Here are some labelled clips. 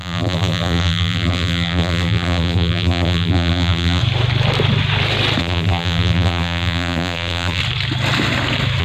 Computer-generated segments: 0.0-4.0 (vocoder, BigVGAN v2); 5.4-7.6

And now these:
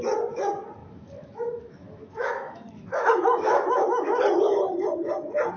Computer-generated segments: 0.8-4.2 (autoencoder, DAC-VAE)

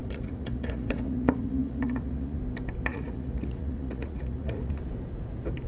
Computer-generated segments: 0.0-2.4 (vocoder, Vocos); 2.9-4.8

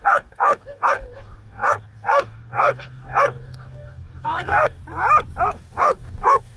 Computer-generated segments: 0.0-4.8 (codec, DAC); 5.5-6.6

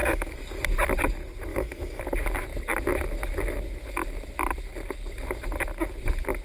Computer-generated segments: 0.0-0.6 (autoencoder, DAC-VAE); 1.5-2.0

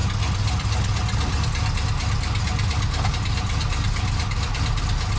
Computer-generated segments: none

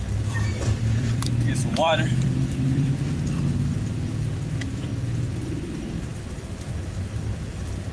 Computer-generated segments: 0.0-7.9 (vocoder, BigVGAN v2)

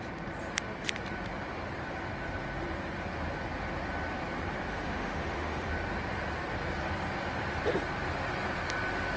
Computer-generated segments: 4.7-5.7 (autoencoder, DAC-VAE)